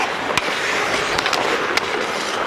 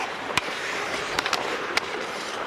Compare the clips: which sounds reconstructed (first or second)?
second